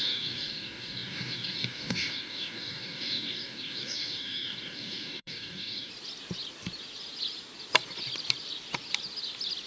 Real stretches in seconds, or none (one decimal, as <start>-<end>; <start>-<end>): 5.9-9.7